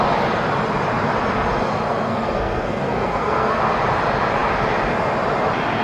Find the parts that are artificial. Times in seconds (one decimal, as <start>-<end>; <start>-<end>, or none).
1.9-3.6